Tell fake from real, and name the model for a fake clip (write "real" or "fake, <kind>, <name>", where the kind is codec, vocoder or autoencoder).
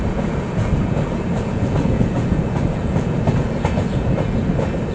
fake, vocoder, Vocos